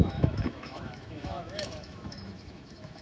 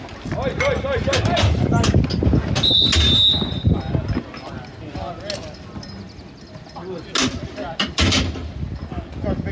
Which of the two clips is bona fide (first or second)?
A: second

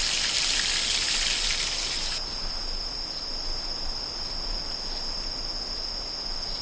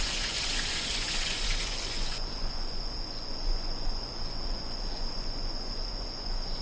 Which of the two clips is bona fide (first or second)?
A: first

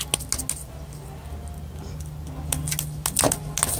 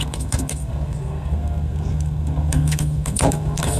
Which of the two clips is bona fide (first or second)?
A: first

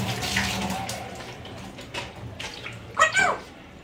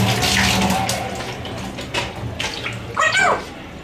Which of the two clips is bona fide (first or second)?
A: second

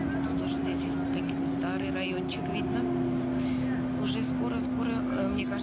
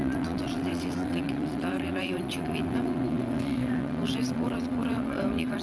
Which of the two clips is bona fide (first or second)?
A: first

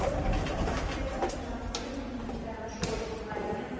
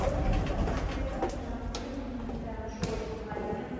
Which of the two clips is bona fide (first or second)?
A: second